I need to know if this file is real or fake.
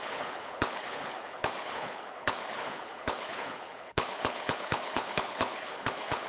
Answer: fake